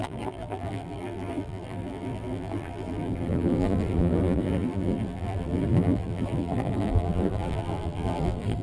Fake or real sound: fake